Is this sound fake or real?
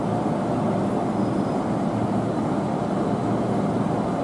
real